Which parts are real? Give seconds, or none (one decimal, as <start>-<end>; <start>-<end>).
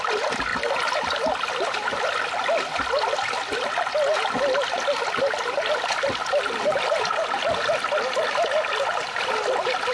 0.0-9.9